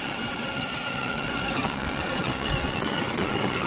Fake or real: fake